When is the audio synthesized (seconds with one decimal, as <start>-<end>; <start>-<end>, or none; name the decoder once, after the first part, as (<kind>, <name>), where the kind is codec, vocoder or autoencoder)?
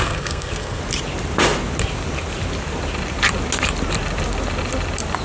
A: 0.0-0.8 (codec, SNAC)